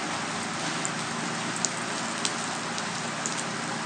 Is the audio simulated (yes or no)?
no